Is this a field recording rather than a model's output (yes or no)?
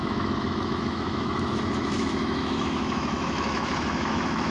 no